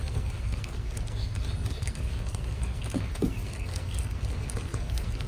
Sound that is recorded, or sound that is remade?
remade